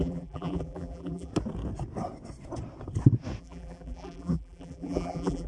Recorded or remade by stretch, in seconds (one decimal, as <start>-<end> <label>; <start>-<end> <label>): 0.0-1.3 remade; 1.3-3.4 recorded; 3.4-5.5 remade